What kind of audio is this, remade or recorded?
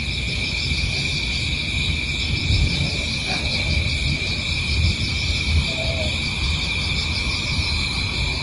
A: recorded